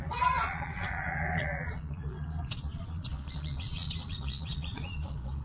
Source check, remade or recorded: remade